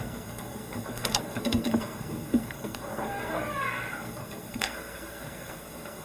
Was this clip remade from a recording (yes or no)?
yes